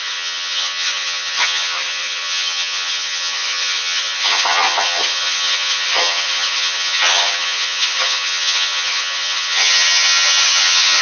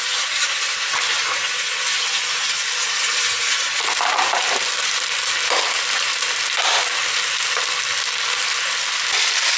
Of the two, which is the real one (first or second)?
second